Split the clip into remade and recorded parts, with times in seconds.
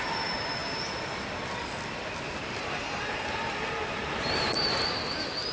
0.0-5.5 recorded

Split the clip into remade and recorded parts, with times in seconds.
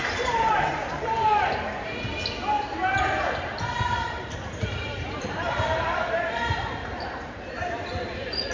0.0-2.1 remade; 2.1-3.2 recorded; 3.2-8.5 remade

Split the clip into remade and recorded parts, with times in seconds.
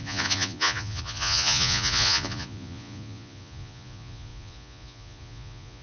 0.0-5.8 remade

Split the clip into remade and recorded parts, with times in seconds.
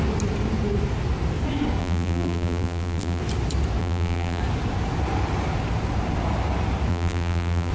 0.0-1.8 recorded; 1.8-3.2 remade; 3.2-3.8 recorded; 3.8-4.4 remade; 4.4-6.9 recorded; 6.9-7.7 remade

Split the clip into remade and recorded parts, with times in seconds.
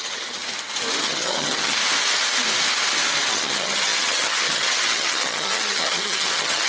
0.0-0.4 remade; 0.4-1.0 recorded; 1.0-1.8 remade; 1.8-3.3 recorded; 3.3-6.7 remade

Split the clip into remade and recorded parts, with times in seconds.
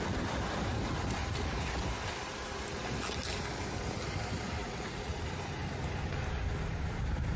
0.0-1.2 recorded; 1.2-1.8 remade; 1.8-4.6 recorded; 4.6-5.2 remade; 5.2-7.4 recorded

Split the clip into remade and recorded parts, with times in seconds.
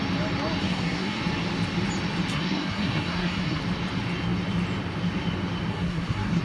0.0-0.6 recorded; 0.6-1.2 remade; 1.2-2.3 recorded; 2.3-3.6 remade; 3.6-5.7 recorded; 5.7-6.4 remade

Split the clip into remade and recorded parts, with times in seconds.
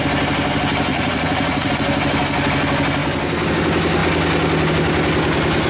0.0-0.9 recorded; 0.9-1.7 remade; 1.7-5.7 recorded